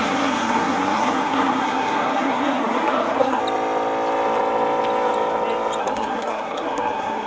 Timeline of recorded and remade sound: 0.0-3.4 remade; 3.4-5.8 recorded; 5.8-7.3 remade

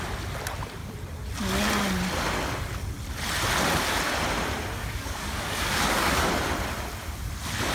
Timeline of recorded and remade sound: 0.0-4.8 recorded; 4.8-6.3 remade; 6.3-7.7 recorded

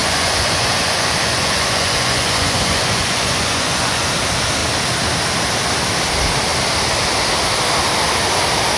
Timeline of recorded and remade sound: 0.0-4.1 remade; 4.1-8.8 recorded

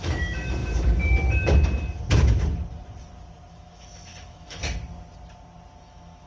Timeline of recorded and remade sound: 0.0-0.6 remade; 0.6-3.5 recorded; 3.5-4.6 remade; 4.6-5.8 recorded; 5.8-6.3 remade

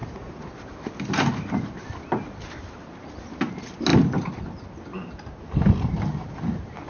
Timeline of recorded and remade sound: 0.0-0.6 remade; 0.6-6.9 recorded